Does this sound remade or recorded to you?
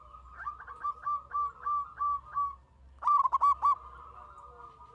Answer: recorded